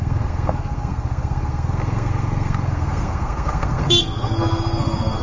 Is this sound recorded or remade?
remade